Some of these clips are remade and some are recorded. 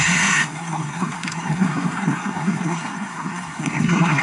remade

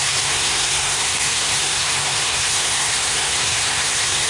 remade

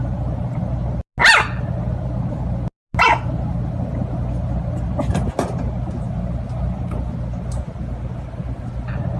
recorded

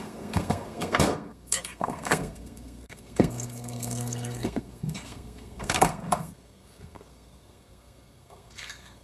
remade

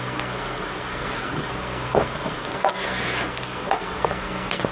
remade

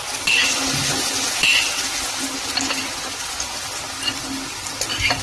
recorded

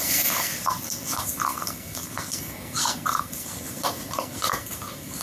remade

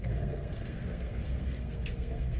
remade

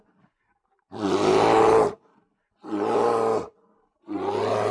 recorded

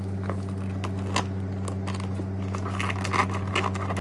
recorded